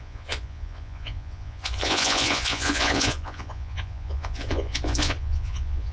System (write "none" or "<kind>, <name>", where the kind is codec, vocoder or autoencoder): vocoder, Vocos